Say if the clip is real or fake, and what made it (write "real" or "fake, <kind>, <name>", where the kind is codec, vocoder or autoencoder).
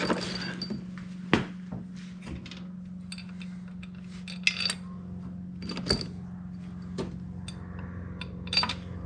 real